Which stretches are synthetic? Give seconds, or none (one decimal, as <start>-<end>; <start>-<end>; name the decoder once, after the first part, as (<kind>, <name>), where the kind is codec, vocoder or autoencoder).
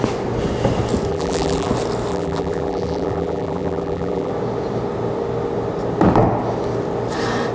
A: 1.1-1.7 (vocoder, BigVGAN v2); 2.1-4.3